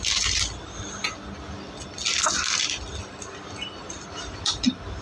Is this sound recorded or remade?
recorded